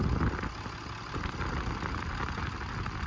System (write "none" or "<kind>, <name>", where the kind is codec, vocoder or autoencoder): none